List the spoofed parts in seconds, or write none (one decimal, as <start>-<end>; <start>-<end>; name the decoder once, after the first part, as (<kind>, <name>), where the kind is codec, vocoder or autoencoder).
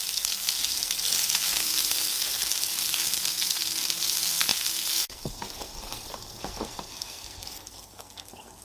0.0-8.6 (codec, SNAC)